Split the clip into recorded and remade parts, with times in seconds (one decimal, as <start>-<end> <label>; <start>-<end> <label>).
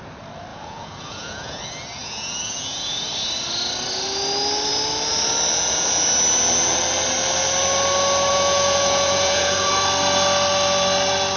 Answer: 0.0-0.5 recorded; 0.5-1.6 remade; 1.6-2.0 recorded; 2.0-3.1 remade; 3.1-8.3 recorded; 8.3-9.7 remade; 9.7-11.4 recorded